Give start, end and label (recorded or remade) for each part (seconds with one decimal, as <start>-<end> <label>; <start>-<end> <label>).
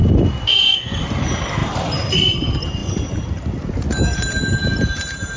0.0-1.0 recorded; 1.0-5.4 remade